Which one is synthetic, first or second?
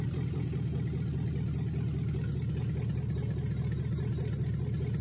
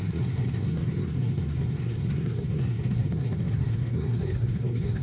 second